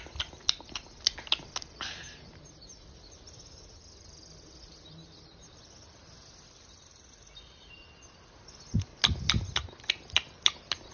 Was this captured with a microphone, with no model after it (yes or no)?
yes